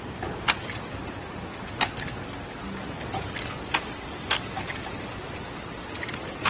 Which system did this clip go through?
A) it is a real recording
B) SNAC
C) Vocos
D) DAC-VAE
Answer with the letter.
A